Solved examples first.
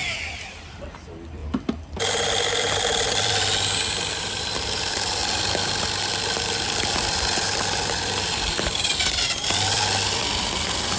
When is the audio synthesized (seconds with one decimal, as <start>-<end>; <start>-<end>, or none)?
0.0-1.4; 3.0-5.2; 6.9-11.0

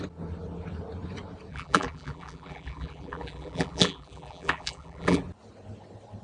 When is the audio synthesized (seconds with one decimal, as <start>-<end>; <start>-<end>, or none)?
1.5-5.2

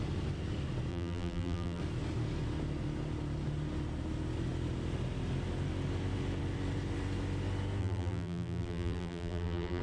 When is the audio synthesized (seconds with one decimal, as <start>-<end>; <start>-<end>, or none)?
0.9-1.8; 7.8-9.8

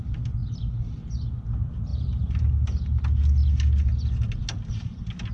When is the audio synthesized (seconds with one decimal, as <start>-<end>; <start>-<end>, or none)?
1.9-2.5

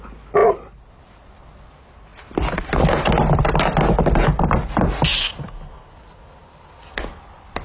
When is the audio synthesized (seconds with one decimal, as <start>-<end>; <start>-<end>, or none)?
none

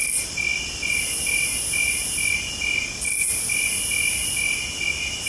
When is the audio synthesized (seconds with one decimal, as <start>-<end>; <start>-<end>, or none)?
none

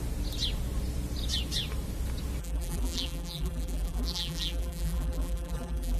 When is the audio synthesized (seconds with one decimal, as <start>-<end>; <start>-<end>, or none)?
2.4-6.0